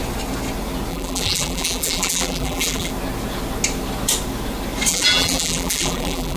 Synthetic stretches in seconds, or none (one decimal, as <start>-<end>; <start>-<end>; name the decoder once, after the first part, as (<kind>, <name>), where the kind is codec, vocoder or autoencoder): 0.9-2.9 (vocoder, BigVGAN v2); 4.9-6.4

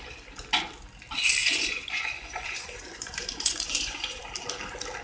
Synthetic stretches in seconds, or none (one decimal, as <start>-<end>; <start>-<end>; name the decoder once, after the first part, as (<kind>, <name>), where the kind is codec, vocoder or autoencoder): 1.4-4.2 (vocoder, Vocos)

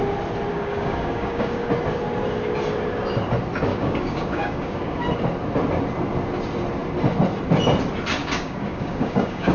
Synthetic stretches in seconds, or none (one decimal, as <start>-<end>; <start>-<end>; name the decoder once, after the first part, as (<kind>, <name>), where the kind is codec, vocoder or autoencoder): 0.5-1.7 (codec, DAC); 3.7-5.0; 8.2-9.5

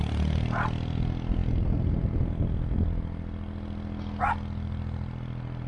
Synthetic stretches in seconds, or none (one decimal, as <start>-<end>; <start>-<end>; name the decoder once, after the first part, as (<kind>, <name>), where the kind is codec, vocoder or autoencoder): none

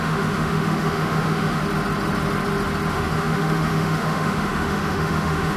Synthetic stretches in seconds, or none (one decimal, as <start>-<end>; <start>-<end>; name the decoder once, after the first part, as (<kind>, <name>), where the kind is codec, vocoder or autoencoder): 0.0-1.6 (autoencoder, DAC-VAE); 2.9-5.6

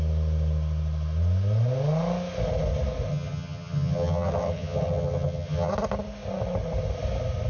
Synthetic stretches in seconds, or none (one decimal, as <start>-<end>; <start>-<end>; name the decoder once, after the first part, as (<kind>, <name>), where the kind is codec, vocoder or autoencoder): 3.1-5.7 (vocoder, HiFi-GAN)

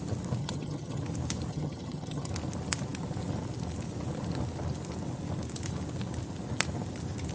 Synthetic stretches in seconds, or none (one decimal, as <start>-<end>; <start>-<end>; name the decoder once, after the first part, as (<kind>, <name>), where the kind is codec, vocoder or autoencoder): 0.4-1.0 (vocoder, HiFi-GAN); 1.5-2.3

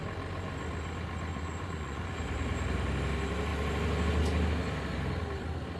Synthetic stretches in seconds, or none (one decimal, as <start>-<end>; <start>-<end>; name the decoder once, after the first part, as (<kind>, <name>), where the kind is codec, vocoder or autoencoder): 1.3-2.1 (vocoder, Vocos)